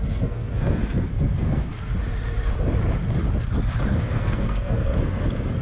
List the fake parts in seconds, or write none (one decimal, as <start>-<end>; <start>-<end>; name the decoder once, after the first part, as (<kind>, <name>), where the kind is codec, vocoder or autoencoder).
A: 0.0-1.7 (codec, SNAC); 3.9-5.6